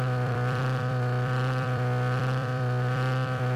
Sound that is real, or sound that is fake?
fake